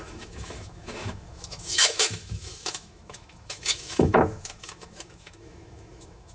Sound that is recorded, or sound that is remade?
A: remade